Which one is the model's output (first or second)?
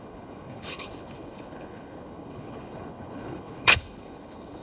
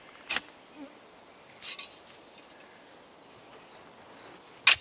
first